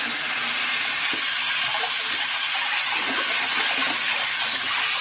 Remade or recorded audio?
recorded